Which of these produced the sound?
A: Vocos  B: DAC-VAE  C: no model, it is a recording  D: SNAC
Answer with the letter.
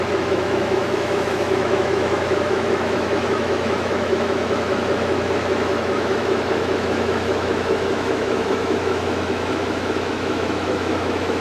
B